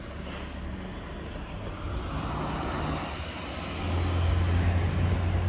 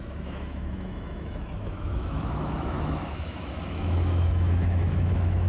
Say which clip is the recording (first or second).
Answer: first